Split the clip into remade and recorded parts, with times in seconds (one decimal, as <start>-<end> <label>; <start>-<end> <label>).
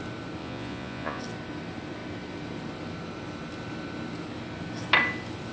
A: 0.0-0.4 recorded; 0.4-1.2 remade; 1.2-5.5 recorded